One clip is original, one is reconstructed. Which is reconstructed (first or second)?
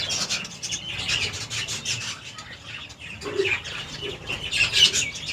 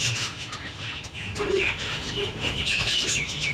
second